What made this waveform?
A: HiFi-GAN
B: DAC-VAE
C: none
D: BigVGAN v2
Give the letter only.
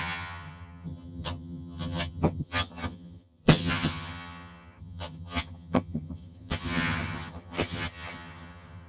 A